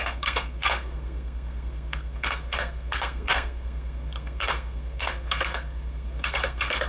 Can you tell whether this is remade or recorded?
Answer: remade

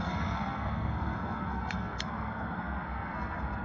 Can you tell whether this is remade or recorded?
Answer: remade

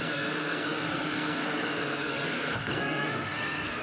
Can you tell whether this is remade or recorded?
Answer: remade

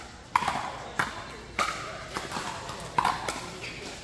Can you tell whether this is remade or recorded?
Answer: recorded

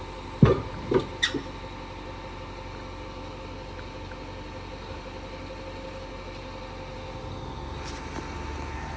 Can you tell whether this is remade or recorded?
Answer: recorded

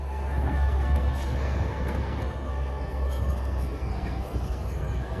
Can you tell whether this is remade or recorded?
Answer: remade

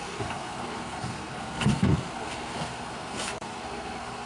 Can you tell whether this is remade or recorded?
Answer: remade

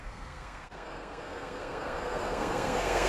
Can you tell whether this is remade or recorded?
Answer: remade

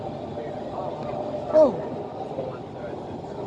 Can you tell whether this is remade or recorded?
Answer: recorded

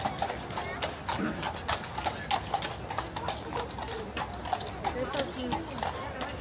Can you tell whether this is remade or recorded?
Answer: recorded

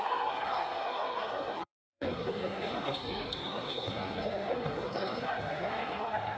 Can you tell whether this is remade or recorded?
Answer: remade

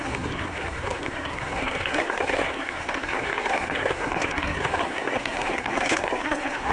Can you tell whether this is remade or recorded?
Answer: remade